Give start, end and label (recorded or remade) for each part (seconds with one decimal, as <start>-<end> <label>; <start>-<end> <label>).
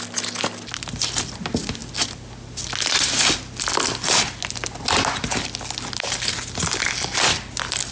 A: 0.0-7.9 recorded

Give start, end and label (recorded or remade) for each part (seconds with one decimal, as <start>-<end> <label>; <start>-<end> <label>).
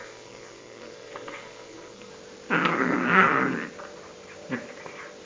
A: 0.0-2.1 remade; 2.1-2.8 recorded; 2.8-3.4 remade; 3.4-5.3 recorded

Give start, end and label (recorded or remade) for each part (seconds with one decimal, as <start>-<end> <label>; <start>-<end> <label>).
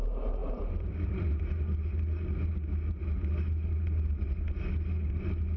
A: 0.0-0.4 recorded; 0.4-1.3 remade; 1.3-5.6 recorded